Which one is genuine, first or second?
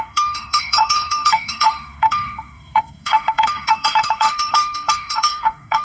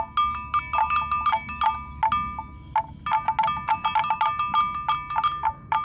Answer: second